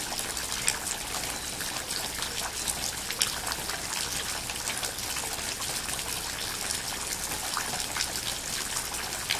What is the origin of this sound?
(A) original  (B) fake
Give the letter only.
A